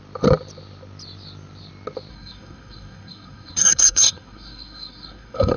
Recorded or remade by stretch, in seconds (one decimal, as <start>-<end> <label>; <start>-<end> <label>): 0.0-2.1 recorded; 2.1-5.6 remade